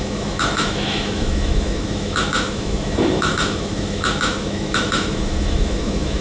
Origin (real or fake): fake